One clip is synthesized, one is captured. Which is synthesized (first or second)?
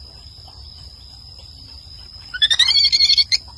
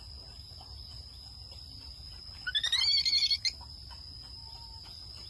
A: first